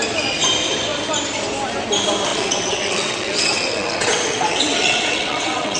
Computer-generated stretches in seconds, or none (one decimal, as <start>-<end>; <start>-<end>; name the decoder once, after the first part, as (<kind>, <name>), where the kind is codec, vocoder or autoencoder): 2.3-5.8 (vocoder, WaveNeXt)